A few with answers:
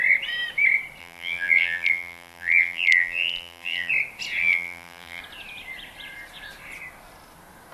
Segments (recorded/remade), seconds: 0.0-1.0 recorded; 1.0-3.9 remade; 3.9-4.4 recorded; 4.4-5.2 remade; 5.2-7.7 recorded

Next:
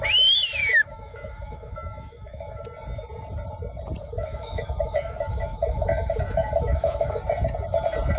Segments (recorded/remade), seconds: 0.0-0.6 recorded; 0.6-2.6 remade; 2.6-4.0 recorded; 4.0-7.2 remade; 7.2-8.2 recorded

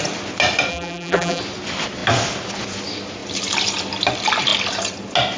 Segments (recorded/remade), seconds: 0.0-0.7 recorded; 0.7-1.4 remade; 1.4-5.4 recorded

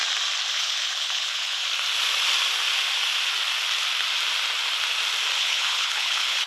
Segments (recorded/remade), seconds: 0.0-0.5 recorded; 0.5-1.6 remade; 1.6-5.4 recorded; 5.4-6.5 remade

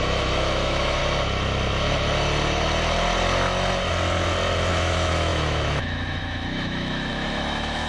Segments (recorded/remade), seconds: 0.0-1.0 remade; 1.0-4.7 recorded; 4.7-7.9 remade